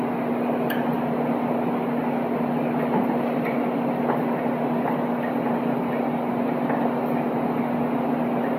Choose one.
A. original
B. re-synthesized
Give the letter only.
A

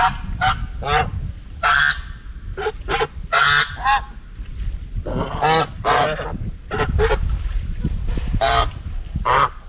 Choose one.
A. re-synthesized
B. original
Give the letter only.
B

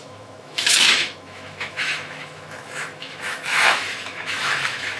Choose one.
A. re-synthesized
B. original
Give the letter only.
A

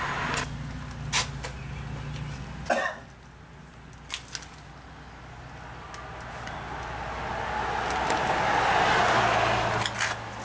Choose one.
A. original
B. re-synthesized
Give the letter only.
A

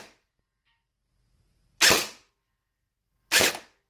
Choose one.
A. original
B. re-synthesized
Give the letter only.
A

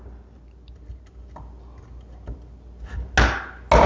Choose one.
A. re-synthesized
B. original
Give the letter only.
B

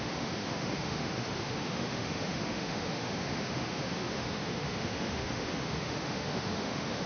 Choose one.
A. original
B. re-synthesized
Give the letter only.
B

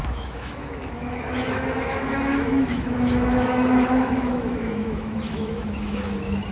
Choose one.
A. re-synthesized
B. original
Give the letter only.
A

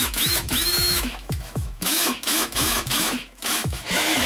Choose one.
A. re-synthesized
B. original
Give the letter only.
A